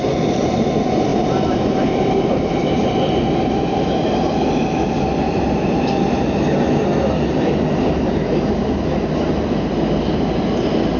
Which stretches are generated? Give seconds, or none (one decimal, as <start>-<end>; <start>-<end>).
1.1-2.5